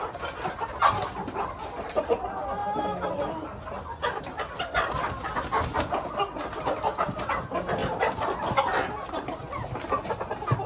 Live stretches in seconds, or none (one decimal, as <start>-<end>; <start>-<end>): 0.0-10.7